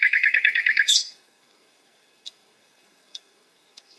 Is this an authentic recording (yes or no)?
no